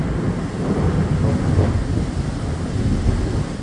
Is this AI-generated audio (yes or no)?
no